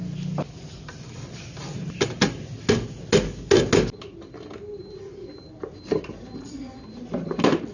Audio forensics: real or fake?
real